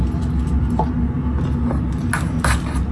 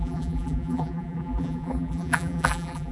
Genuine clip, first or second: first